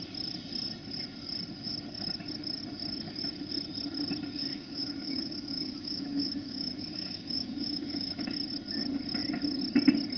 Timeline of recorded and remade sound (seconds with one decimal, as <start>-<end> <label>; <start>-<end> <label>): 0.0-4.5 recorded; 4.5-8.2 remade; 8.2-10.2 recorded